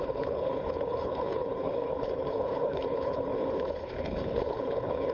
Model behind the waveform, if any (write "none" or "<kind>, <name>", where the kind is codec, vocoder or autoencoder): codec, HILCodec